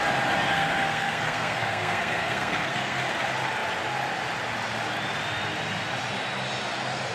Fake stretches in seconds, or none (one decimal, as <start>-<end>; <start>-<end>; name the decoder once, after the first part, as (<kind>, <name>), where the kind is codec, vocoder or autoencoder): 0.5-3.0 (codec, SNAC)